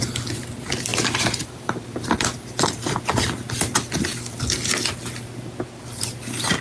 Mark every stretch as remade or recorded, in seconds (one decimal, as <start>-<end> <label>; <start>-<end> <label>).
0.0-0.9 recorded; 0.9-3.0 remade; 3.0-4.1 recorded; 4.1-4.7 remade; 4.7-6.6 recorded